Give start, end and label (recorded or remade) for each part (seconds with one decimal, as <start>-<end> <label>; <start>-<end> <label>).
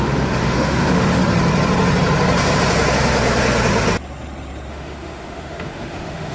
0.0-1.2 remade; 1.2-4.7 recorded; 4.7-6.3 remade